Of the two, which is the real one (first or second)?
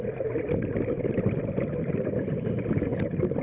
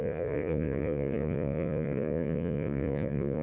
first